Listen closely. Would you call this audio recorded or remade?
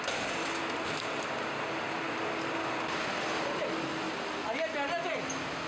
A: recorded